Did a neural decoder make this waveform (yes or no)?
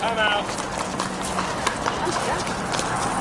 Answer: no